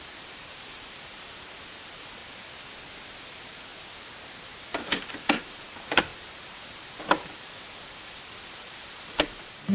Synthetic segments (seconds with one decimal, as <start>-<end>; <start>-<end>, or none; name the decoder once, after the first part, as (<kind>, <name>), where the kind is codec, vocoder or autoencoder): 0.0-2.2 (vocoder, BigVGAN v2); 3.1-3.7; 5.1-9.7